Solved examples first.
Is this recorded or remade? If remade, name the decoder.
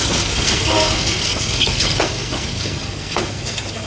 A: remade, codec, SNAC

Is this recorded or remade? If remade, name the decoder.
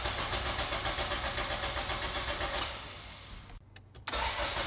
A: recorded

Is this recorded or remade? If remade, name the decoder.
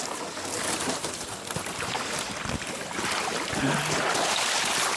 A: recorded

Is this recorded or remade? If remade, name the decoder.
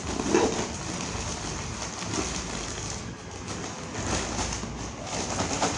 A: recorded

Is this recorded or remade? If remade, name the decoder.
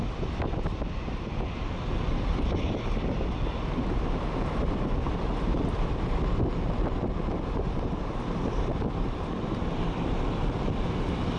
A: recorded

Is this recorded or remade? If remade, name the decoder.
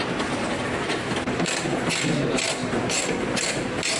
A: recorded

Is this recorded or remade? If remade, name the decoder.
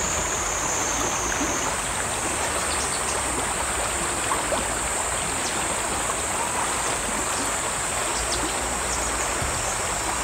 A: recorded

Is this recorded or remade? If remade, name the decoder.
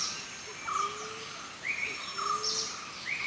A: remade, vocoder, BigVGAN v2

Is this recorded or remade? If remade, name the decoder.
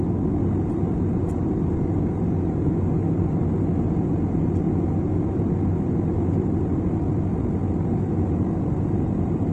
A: recorded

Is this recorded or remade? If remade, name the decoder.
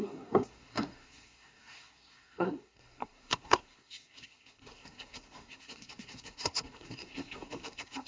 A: remade, codec, SNAC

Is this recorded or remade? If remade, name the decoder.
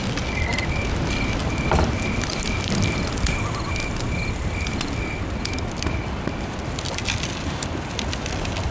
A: recorded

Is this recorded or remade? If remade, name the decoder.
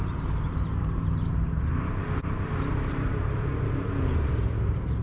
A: remade, vocoder, BigVGAN v2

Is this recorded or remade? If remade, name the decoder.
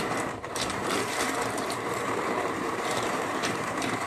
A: remade, vocoder, BigVGAN v2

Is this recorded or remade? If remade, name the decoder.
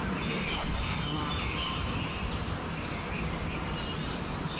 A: recorded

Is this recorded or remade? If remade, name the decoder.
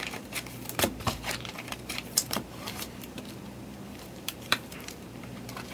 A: remade, vocoder, BigVGAN v2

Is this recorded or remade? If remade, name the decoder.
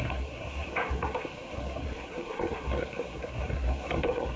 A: remade, codec, SNAC